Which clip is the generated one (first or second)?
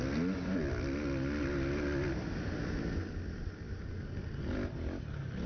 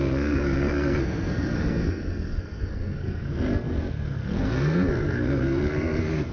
second